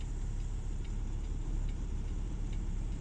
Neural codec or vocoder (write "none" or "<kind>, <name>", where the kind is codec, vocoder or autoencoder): vocoder, BigVGAN v2